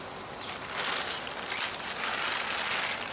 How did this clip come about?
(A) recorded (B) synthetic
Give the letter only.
A